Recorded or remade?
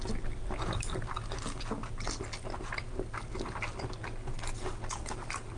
recorded